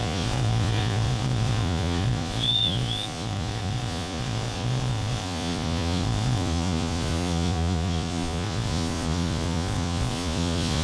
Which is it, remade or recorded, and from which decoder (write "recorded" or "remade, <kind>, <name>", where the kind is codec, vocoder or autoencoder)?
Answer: remade, vocoder, Vocos